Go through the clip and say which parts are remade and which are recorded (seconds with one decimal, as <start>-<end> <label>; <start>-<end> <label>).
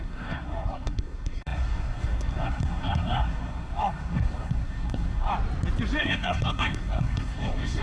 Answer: 0.0-5.3 remade; 5.3-6.0 recorded; 6.0-7.8 remade